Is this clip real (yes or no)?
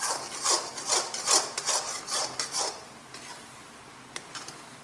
yes